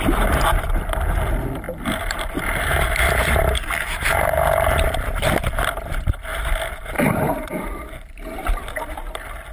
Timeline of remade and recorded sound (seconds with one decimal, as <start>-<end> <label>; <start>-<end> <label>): 0.0-6.3 remade; 6.3-6.8 recorded; 6.8-9.5 remade